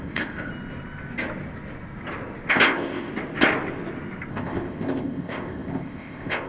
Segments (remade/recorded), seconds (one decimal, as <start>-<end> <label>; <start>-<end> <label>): 0.0-0.5 remade; 0.5-2.5 recorded; 2.5-3.1 remade; 3.1-4.3 recorded; 4.3-6.5 remade

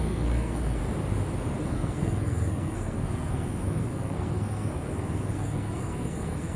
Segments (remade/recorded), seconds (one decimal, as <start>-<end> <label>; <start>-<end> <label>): 0.0-0.8 remade; 0.8-1.6 recorded; 1.6-6.6 remade

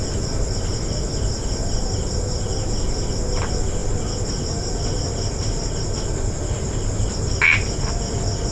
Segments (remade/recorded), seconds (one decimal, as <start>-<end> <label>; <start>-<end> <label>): 0.0-8.5 recorded

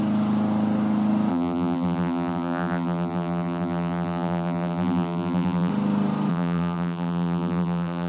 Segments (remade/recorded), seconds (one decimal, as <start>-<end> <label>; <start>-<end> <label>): 0.0-1.3 recorded; 1.3-5.7 remade; 5.7-6.3 recorded; 6.3-8.1 remade

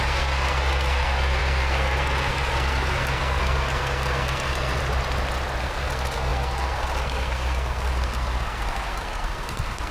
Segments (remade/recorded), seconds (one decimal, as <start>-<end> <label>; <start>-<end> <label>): 0.0-4.8 remade; 4.8-5.6 recorded; 5.6-9.9 remade

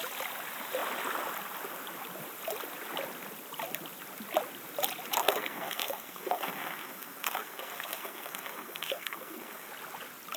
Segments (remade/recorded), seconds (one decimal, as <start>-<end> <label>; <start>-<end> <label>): 0.0-5.2 recorded; 5.2-9.7 remade; 9.7-10.4 recorded

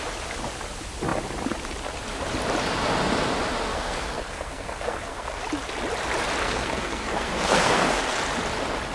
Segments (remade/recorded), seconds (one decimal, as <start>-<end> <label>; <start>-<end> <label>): 0.0-3.7 recorded; 3.7-5.4 remade; 5.4-6.4 recorded; 6.4-8.2 remade; 8.2-8.9 recorded

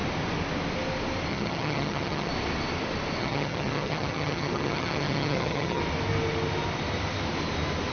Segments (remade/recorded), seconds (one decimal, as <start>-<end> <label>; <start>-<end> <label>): 0.0-1.3 recorded; 1.3-2.3 remade; 2.3-3.2 recorded; 3.2-5.8 remade; 5.8-7.9 recorded